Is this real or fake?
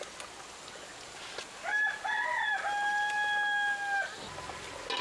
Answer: real